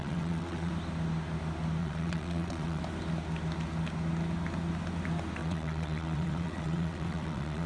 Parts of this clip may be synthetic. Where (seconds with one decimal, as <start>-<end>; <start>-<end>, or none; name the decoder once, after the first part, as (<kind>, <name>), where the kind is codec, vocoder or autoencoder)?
0.0-0.7 (vocoder, WaveNeXt); 1.8-2.8; 5.4-7.7